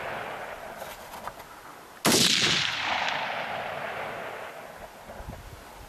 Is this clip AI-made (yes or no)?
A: no